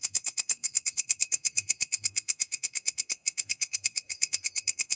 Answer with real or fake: fake